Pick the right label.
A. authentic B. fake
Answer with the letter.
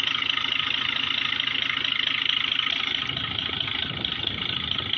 A